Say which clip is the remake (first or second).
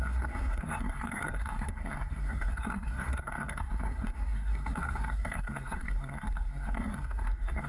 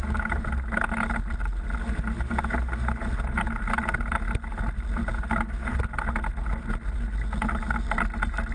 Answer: first